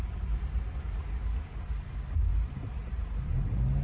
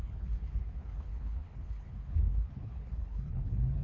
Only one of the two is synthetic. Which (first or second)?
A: second